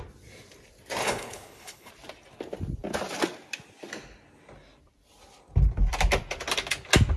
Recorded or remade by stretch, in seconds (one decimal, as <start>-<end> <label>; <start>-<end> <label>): 0.0-1.0 recorded; 1.0-1.9 remade; 1.9-7.2 recorded